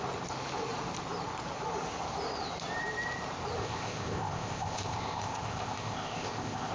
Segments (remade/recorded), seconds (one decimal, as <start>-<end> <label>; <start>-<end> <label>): 0.0-3.6 recorded; 3.6-6.7 remade

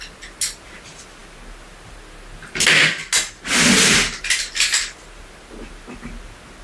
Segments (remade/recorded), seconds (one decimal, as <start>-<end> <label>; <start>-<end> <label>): 0.0-6.6 recorded

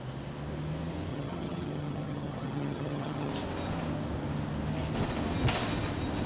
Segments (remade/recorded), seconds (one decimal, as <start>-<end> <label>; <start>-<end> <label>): 0.0-1.1 recorded; 1.1-3.3 remade; 3.3-6.3 recorded

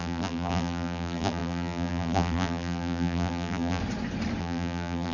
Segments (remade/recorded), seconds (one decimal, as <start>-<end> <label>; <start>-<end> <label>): 0.0-3.8 remade; 3.8-4.4 recorded; 4.4-5.1 remade

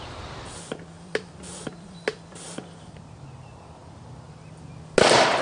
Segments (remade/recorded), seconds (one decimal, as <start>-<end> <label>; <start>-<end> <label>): 0.0-5.4 recorded

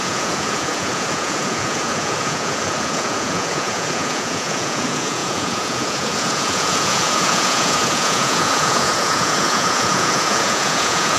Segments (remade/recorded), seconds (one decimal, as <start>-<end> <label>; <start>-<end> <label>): 0.0-11.2 remade

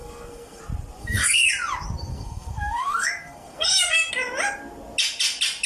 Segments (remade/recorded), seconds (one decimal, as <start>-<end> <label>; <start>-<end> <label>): 0.0-0.6 remade; 0.6-1.0 recorded; 1.0-1.5 remade; 1.5-2.1 recorded; 2.1-4.1 remade; 4.1-5.7 recorded